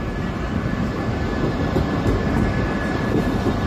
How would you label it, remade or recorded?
recorded